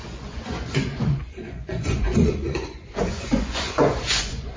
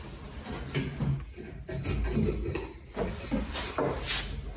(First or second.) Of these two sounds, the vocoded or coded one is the first